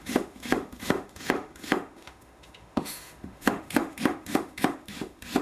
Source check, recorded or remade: remade